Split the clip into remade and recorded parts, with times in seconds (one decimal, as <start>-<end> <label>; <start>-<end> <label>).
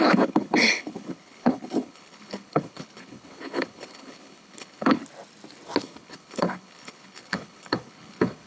0.0-5.0 remade; 5.0-5.8 recorded; 5.8-8.5 remade